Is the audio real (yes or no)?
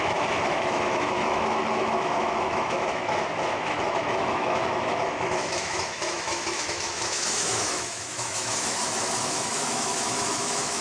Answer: no